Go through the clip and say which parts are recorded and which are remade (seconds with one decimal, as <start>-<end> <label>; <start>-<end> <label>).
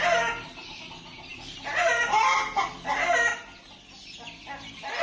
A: 0.0-1.3 recorded; 1.3-1.9 remade; 1.9-5.0 recorded